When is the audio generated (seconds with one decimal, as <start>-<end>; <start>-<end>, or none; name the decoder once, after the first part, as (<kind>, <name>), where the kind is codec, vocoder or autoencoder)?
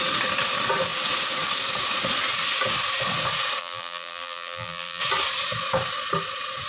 3.6-5.0 (vocoder, BigVGAN v2)